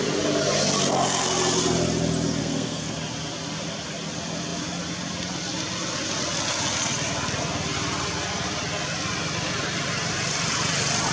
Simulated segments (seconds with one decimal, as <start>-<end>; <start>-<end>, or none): 2.4-2.9